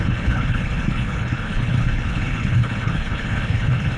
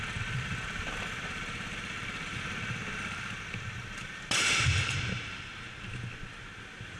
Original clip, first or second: second